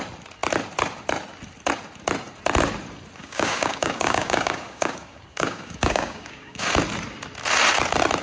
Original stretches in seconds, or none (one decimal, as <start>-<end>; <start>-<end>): 0.0-3.2; 6.7-8.2